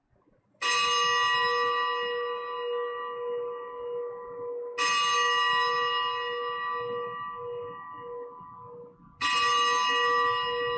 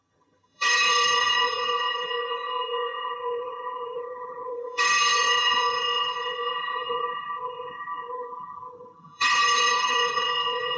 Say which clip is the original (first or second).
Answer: first